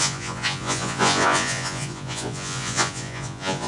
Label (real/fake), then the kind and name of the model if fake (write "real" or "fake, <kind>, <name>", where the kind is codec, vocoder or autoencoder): fake, vocoder, Vocos